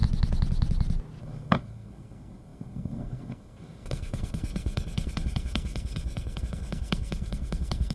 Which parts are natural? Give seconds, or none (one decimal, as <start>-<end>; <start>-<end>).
0.0-1.2